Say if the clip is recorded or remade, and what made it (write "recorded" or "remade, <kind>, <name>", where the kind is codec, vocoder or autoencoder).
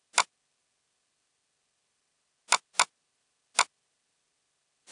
recorded